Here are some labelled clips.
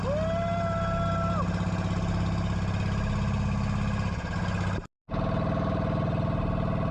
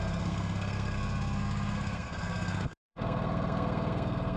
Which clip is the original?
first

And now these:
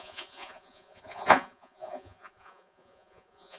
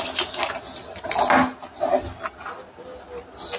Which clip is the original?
second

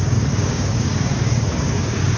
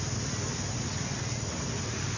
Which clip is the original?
second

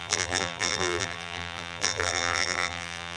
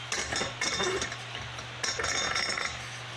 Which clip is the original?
second